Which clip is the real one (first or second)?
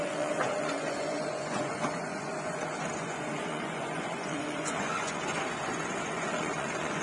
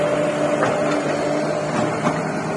second